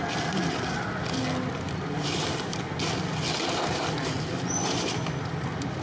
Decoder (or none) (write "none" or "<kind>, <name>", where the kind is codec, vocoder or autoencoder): none